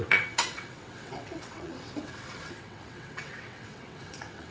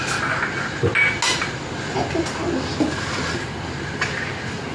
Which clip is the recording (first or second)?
second